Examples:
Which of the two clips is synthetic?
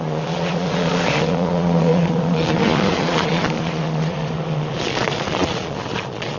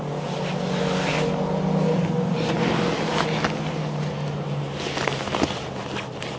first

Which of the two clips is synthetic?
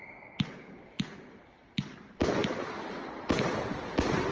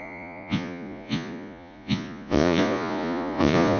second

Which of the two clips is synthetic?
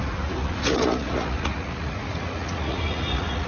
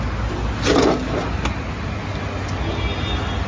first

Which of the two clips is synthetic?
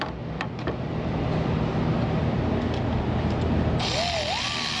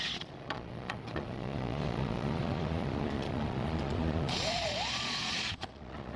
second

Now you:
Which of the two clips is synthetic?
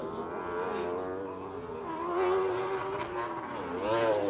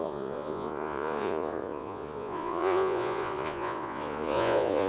second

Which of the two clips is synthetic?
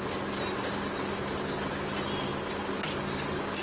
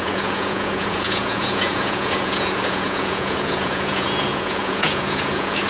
second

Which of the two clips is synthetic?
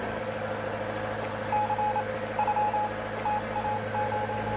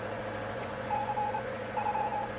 second